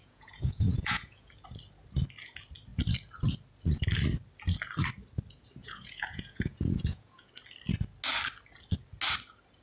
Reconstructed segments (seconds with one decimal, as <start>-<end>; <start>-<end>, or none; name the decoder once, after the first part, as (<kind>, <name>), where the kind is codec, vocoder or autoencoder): 0.0-1.3 (vocoder, Vocos); 5.6-7.3

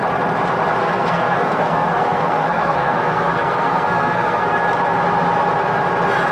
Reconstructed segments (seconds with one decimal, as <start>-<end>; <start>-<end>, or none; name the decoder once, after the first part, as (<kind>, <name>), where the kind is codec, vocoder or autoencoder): 0.8-4.6 (codec, SNAC)

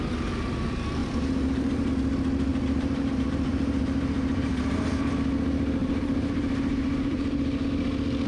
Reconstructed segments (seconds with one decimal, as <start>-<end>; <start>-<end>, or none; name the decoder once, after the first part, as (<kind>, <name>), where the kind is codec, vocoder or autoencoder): 1.0-1.9 (vocoder, BigVGAN v2); 2.5-5.0; 5.8-7.6

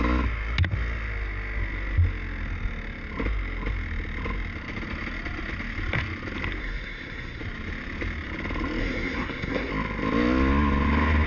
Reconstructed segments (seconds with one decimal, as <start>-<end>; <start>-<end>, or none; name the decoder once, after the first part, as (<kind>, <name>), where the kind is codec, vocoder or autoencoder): 6.6-7.4 (codec, SNAC); 8.8-9.7

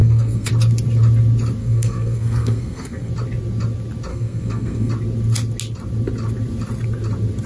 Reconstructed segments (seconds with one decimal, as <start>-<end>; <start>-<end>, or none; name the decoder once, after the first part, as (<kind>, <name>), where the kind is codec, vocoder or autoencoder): 0.0-0.5 (codec, SNAC); 1.6-3.1; 4.1-4.9

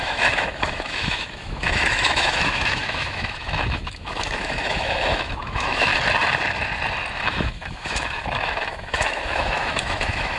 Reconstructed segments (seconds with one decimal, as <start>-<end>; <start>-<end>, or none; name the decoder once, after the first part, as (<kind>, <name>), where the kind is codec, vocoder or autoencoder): 0.0-5.9 (autoencoder, DAC-VAE); 7.1-10.4

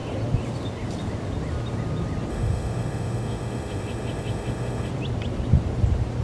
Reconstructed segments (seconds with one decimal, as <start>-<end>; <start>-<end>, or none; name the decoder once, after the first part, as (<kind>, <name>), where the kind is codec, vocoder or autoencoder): 2.3-4.9 (autoencoder, DAC-VAE)

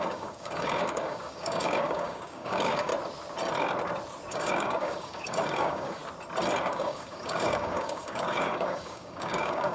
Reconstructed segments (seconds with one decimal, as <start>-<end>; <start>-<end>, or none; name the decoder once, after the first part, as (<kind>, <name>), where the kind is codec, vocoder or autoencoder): 0.0-2.9 (codec, DAC); 4.3-6.0; 6.7-9.7